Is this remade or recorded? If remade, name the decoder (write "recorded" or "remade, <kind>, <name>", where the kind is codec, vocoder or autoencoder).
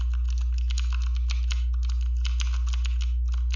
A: recorded